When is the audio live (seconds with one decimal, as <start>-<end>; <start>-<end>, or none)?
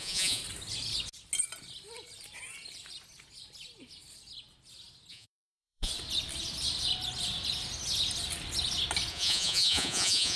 0.4-5.1; 5.9-9.1